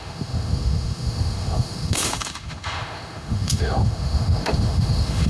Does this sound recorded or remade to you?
remade